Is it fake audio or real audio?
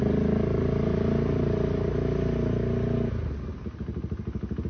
real